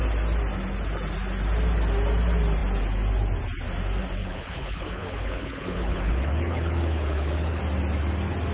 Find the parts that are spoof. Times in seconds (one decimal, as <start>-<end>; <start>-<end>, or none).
4.2-7.6